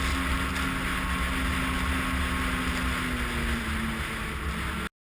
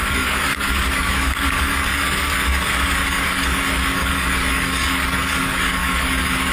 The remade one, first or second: second